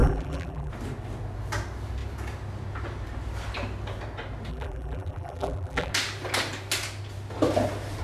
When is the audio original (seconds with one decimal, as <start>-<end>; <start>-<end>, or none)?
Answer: 0.7-4.5; 5.9-8.0